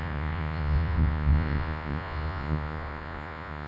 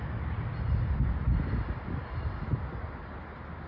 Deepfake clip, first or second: first